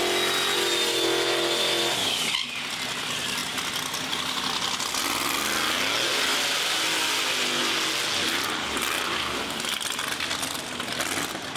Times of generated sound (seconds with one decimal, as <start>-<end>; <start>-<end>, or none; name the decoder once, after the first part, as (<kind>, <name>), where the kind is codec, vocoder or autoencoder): 2.0-2.6 (codec, DAC)